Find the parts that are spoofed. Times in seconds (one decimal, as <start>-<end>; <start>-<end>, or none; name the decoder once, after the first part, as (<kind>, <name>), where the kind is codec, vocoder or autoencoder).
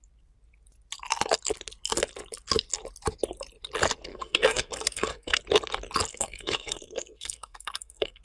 4.1-5.4 (codec, SNAC); 6.1-8.2